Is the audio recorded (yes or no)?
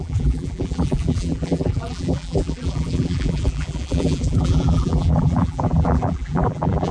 no